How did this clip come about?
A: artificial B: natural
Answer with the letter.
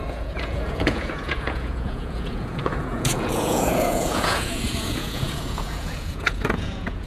A